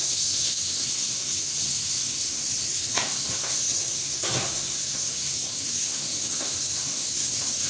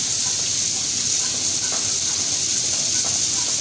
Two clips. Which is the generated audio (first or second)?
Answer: first